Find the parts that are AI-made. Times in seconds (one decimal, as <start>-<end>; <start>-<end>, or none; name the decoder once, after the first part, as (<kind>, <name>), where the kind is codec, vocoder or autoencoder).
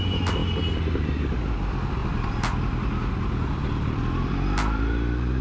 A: 2.0-5.4 (vocoder, BigVGAN v2)